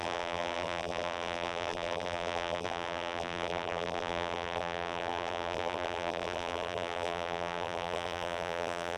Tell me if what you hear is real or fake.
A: fake